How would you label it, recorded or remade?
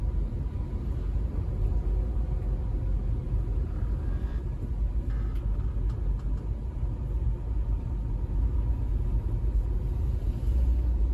recorded